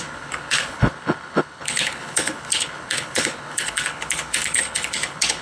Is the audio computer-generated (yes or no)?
yes